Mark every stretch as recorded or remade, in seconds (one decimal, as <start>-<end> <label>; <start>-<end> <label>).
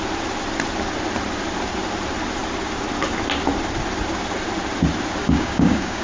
0.0-5.2 recorded; 5.2-6.0 remade